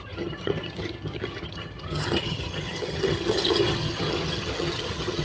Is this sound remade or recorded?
remade